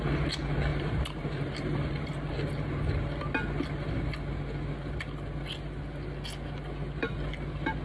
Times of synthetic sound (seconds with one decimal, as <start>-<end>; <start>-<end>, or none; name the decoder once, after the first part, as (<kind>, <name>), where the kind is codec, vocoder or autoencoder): 0.7-2.3 (vocoder, BigVGAN v2)